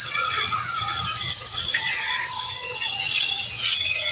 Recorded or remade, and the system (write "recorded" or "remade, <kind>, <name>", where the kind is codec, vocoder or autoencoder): remade, vocoder, WaveNeXt